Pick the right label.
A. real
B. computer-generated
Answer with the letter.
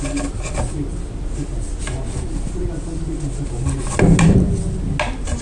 A